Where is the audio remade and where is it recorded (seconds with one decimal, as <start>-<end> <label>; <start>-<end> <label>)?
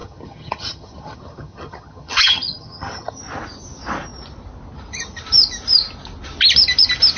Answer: 0.0-3.2 remade; 3.2-7.2 recorded